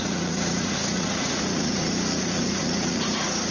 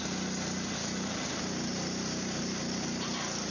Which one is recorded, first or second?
second